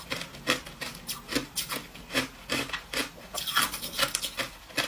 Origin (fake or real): real